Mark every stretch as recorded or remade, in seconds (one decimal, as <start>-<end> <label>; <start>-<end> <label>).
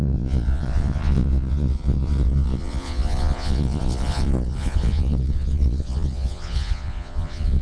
0.0-7.6 remade